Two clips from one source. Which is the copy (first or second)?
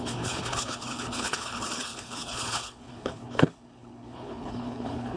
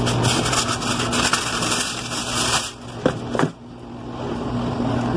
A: first